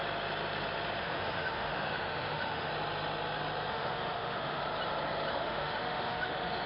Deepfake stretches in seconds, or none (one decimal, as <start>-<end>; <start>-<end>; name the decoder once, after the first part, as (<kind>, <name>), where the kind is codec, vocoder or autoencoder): 1.0-2.7 (autoencoder, DAC-VAE); 3.7-4.6; 5.3-6.7